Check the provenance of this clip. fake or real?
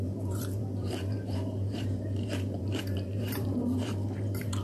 fake